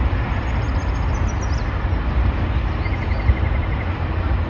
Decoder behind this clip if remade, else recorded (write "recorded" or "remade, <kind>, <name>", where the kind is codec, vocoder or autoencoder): recorded